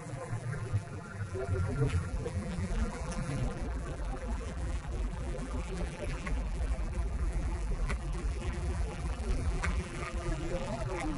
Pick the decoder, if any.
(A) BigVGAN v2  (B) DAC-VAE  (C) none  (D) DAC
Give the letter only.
A